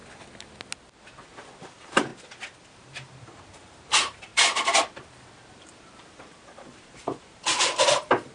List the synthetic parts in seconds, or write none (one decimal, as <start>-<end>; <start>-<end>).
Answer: 1.6-2.1; 2.7-4.3; 5.5-8.3